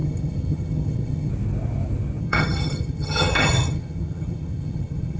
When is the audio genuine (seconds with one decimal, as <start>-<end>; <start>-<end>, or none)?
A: 1.3-2.2